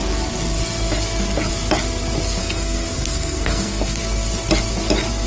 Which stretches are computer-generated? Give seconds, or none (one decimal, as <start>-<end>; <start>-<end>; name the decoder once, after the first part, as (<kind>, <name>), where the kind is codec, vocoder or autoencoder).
2.4-4.0 (codec, SNAC)

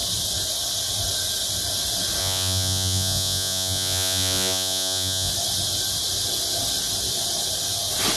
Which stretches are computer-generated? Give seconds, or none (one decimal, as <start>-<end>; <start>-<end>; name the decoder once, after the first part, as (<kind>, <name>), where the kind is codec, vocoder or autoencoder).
2.2-5.3 (vocoder, Vocos)

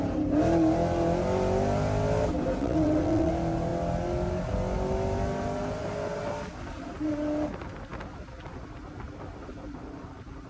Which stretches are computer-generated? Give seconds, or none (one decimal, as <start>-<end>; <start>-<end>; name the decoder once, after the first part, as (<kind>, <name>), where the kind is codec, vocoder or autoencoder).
2.6-3.3 (vocoder, WaveNeXt)

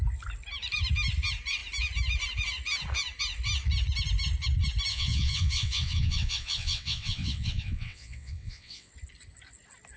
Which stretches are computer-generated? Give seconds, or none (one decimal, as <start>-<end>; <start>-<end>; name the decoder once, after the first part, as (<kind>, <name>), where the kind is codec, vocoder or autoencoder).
4.9-8.9 (vocoder, WaveNeXt)